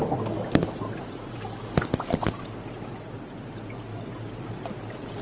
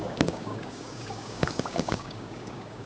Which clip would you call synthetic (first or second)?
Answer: second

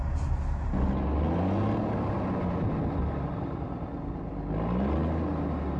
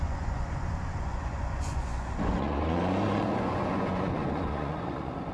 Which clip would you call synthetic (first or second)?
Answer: second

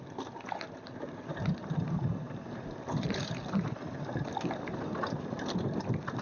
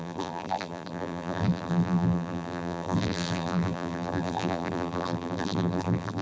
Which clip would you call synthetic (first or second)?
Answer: second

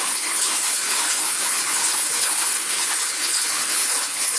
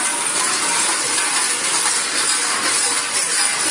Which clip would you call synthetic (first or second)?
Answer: first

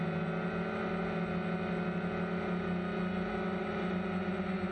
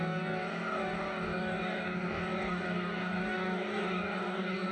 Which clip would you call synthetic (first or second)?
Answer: second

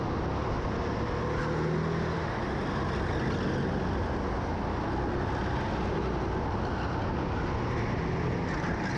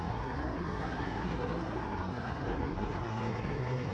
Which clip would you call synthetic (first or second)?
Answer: second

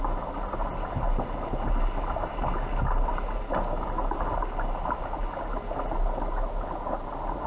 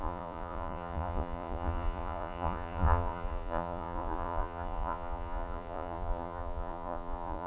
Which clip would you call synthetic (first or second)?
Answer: second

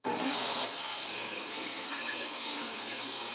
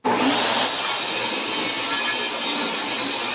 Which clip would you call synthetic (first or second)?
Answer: first